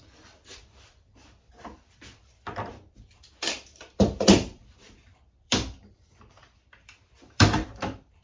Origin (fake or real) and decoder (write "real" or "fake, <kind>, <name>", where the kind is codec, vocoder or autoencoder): fake, vocoder, BigVGAN v2